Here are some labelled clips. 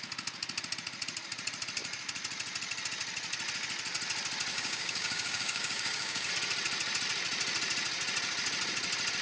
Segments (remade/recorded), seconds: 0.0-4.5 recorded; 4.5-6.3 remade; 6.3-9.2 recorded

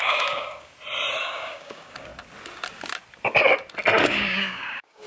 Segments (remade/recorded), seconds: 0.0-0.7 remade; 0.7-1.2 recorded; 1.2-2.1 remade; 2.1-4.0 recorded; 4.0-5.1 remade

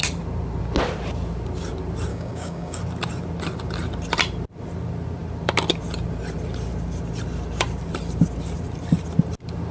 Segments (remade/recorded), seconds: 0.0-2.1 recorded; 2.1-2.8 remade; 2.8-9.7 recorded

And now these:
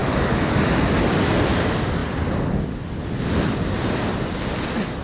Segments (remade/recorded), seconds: 0.0-0.6 remade; 0.6-5.0 recorded

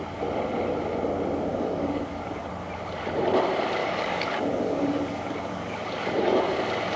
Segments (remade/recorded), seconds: 0.0-1.5 recorded; 1.5-2.5 remade; 2.5-3.8 recorded; 3.8-6.6 remade; 6.6-7.0 recorded

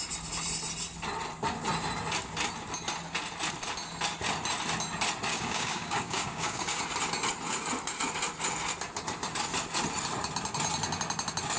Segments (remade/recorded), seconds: 0.0-5.3 recorded; 5.3-6.8 remade; 6.8-11.6 recorded